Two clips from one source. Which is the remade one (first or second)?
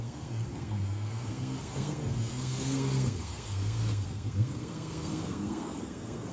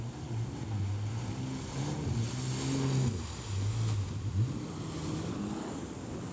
first